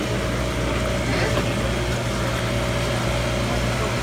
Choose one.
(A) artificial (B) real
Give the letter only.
B